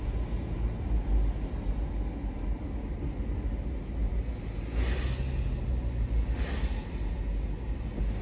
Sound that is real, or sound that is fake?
real